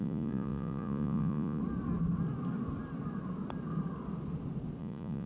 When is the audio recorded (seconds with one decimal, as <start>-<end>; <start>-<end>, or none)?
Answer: 1.6-4.8